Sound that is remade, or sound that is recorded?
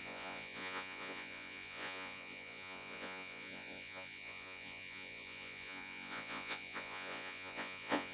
remade